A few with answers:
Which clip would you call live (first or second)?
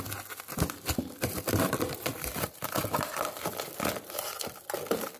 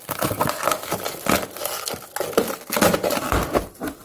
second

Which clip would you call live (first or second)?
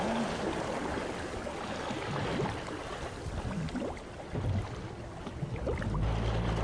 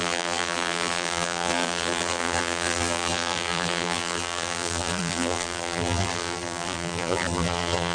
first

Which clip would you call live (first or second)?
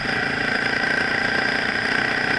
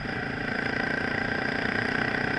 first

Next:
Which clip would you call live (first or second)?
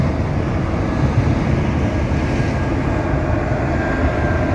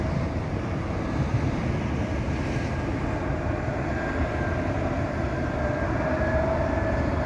first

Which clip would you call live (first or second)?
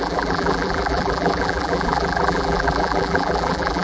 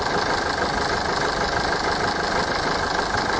second